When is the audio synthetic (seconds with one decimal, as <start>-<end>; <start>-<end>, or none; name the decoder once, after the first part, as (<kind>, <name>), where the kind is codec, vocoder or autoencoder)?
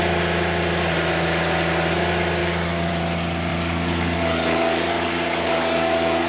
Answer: 2.4-2.9 (codec, DAC); 3.5-6.3